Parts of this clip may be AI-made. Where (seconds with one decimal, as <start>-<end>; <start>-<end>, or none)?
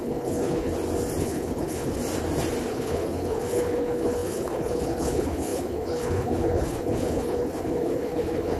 0.0-0.7; 1.2-2.0; 2.7-8.6